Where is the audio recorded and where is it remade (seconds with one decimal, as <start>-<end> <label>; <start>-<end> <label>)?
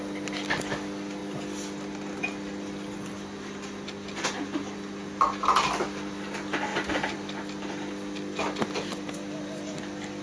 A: 0.0-10.2 recorded